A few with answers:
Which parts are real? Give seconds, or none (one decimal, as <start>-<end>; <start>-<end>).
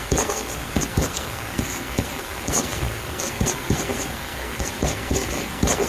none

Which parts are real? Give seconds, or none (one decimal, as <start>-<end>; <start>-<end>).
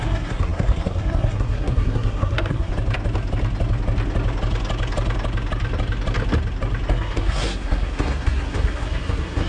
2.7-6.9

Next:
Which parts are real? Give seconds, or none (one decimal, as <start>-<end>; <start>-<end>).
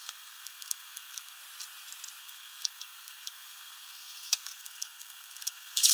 1.4-2.2